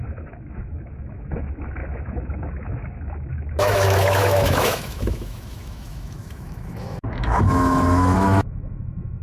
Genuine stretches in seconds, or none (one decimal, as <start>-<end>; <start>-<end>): none